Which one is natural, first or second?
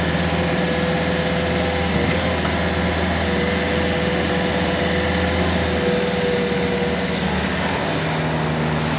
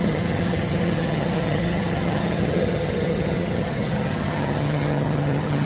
first